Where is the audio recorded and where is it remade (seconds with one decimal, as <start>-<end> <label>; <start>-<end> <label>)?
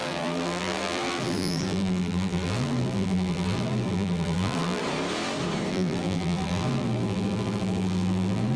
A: 0.0-4.8 remade; 4.8-5.7 recorded; 5.7-8.6 remade